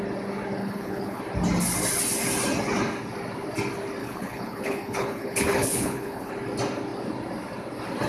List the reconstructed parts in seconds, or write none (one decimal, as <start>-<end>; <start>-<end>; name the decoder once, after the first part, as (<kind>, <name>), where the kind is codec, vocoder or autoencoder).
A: 0.6-1.2 (codec, HILCodec); 4.0-6.3